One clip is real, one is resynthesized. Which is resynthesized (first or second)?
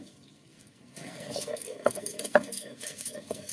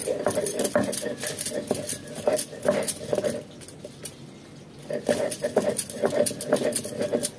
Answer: first